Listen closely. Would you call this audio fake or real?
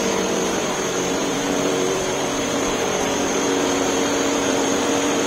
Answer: fake